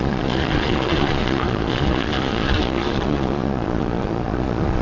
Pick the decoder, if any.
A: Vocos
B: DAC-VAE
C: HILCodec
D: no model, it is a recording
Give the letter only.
A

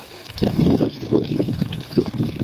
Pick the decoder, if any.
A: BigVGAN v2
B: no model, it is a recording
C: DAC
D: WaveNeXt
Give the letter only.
C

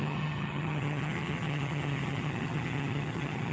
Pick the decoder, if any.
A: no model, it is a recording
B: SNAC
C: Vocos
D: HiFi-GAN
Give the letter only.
D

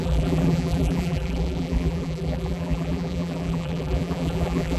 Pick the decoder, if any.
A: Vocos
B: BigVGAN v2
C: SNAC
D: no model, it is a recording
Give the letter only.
B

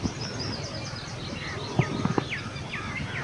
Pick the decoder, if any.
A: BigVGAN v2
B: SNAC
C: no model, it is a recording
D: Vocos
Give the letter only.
C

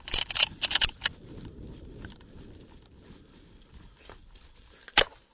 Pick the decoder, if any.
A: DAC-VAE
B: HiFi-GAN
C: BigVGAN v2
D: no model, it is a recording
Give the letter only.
D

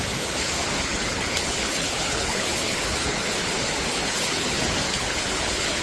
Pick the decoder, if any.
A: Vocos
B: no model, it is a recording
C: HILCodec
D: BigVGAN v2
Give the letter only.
C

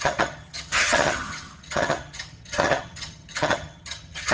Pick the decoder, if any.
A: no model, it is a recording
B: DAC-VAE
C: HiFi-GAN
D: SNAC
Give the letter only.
C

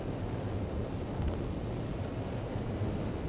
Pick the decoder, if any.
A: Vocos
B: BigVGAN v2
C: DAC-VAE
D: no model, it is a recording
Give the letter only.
D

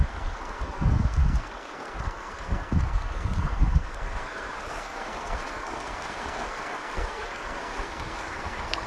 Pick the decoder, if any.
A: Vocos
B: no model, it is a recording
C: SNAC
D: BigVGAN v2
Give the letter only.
C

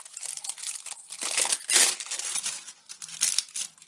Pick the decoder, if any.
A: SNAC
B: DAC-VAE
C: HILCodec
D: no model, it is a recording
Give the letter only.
D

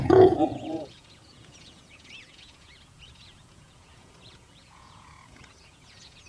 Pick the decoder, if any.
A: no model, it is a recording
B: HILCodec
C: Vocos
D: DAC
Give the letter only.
C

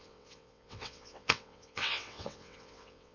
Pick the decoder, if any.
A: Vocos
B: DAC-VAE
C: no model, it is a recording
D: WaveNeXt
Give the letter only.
D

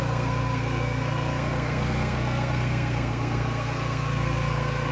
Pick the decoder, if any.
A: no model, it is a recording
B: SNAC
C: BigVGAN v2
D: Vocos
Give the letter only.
B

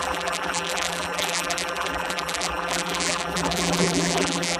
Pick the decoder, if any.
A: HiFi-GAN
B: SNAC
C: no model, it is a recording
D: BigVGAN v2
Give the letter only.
D